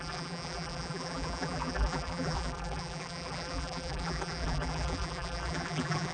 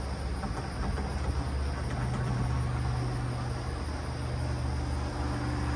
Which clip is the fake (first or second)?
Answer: first